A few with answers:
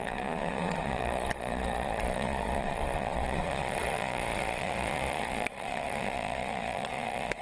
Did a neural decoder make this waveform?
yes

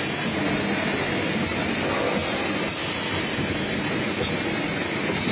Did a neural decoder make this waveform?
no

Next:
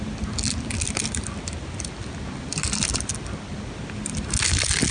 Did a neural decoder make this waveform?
no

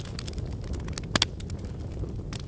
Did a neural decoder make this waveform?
no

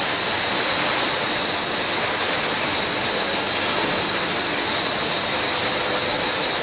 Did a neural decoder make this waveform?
no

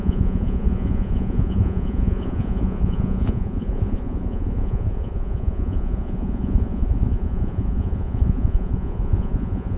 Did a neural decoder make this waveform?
yes